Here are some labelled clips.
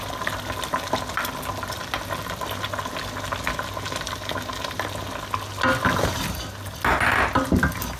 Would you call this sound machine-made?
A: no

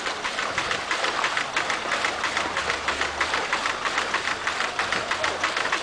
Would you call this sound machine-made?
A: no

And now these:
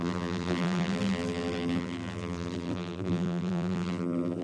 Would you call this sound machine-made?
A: yes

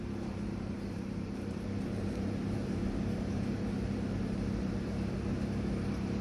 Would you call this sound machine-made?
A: yes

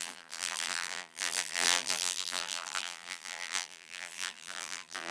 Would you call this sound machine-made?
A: yes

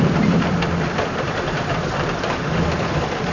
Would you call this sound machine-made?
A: yes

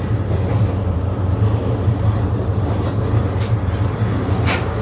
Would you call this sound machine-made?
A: yes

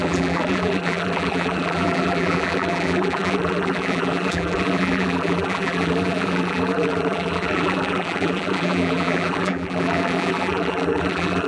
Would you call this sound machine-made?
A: yes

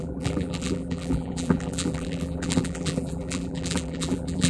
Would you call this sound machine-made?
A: yes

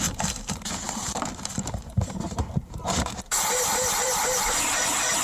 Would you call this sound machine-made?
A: yes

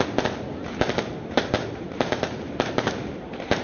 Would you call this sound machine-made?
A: no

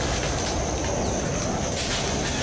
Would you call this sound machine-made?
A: no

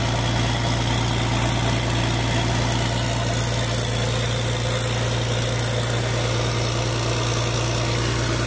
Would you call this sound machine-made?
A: no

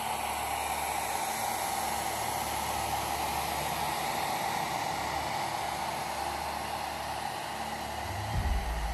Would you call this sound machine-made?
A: no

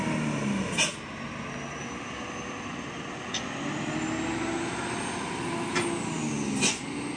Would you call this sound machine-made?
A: no